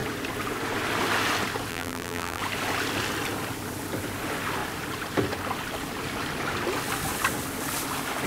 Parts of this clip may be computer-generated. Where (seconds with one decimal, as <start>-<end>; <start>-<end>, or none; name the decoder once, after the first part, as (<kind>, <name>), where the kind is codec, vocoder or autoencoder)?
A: 1.7-2.4 (vocoder, BigVGAN v2)